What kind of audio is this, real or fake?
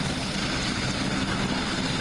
real